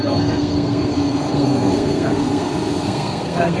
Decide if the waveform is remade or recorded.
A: remade